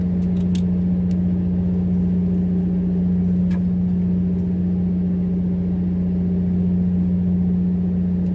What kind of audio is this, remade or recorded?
recorded